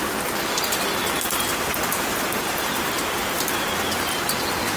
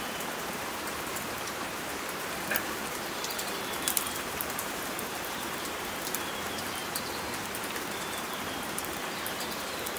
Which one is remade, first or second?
second